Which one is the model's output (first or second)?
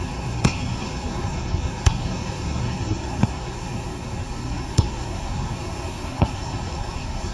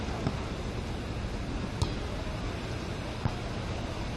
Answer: first